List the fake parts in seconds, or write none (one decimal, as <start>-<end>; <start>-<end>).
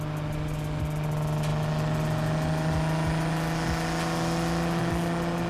none